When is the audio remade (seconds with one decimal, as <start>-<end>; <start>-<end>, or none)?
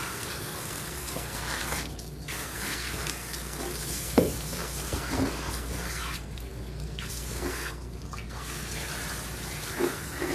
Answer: 0.0-8.9; 9.6-10.3